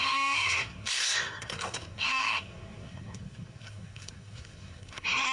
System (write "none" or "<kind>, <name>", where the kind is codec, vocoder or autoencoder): codec, SNAC